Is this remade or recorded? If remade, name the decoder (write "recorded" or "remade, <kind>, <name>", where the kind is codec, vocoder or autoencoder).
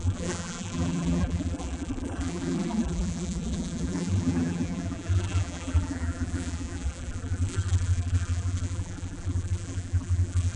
remade, vocoder, BigVGAN v2